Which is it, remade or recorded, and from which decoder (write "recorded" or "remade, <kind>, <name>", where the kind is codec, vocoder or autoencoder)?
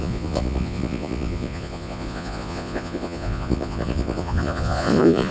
remade, vocoder, Vocos